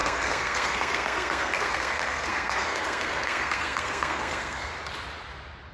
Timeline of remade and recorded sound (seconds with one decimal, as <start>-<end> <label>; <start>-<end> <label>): 0.0-4.7 remade; 4.7-5.7 recorded

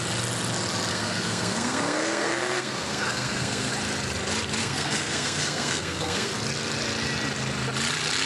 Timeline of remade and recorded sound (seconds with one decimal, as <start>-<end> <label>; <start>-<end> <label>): 0.0-0.9 recorded; 0.9-3.7 remade; 3.7-4.6 recorded; 4.6-6.3 remade; 6.3-8.3 recorded

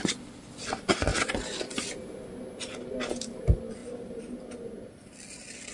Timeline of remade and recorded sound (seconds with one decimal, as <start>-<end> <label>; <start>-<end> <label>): 0.0-5.7 recorded

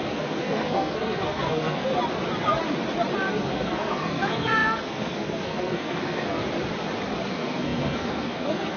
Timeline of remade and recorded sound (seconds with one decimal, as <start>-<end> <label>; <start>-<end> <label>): 0.0-1.9 remade; 1.9-3.3 recorded; 3.3-6.4 remade; 6.4-7.3 recorded; 7.3-8.8 remade

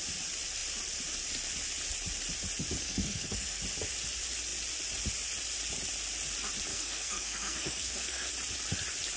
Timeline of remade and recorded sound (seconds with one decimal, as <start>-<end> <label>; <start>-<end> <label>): 0.0-2.8 recorded; 2.8-3.6 remade; 3.6-6.7 recorded; 6.7-8.3 remade; 8.3-9.2 recorded

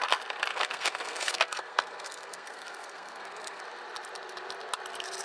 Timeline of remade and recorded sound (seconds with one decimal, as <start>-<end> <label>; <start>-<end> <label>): 0.0-0.5 recorded; 0.5-3.6 remade; 3.6-5.2 recorded